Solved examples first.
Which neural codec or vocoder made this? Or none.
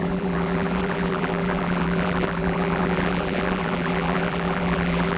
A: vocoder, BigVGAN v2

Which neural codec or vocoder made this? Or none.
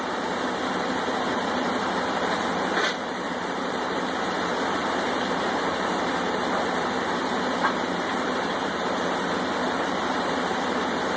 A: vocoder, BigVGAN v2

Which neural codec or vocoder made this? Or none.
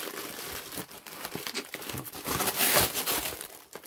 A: vocoder, BigVGAN v2